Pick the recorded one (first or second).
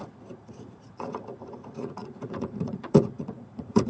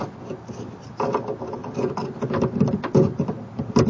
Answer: second